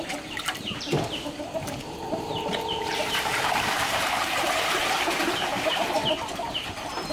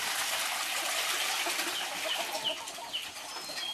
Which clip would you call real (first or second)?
second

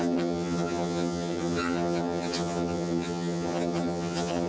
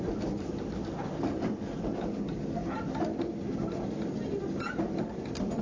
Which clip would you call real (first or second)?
second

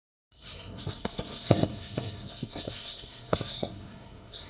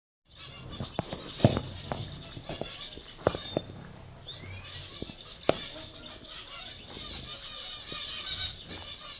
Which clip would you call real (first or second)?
second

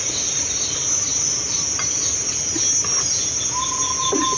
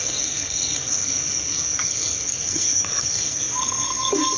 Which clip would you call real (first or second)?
first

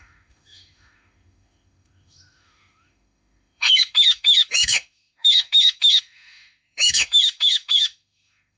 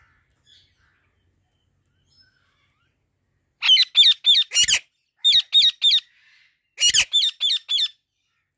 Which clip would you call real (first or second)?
second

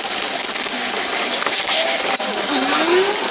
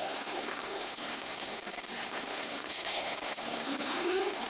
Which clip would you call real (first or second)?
first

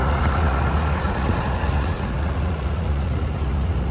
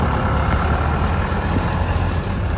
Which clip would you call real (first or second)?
second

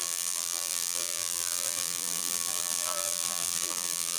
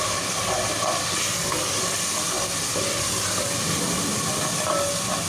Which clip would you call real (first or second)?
second